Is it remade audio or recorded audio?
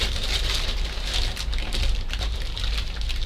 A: remade